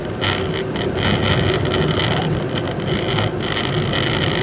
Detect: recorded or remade recorded